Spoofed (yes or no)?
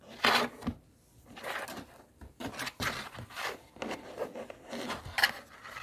no